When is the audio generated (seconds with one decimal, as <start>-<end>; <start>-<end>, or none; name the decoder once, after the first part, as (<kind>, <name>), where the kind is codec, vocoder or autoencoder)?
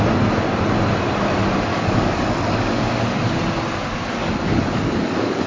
1.7-2.9 (codec, DAC); 4.2-5.5